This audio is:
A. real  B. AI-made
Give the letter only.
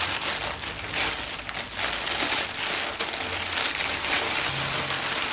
A